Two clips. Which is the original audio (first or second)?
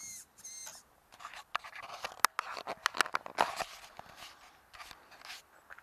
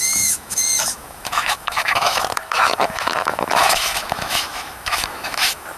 first